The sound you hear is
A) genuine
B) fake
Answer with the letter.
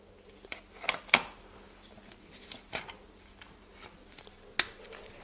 A